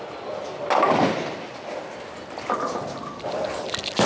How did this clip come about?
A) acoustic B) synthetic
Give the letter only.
A